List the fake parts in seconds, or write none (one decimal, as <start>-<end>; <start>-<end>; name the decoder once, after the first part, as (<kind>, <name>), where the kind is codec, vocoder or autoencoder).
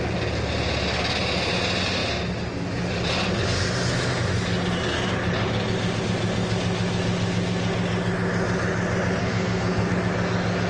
9.2-9.9 (codec, SNAC)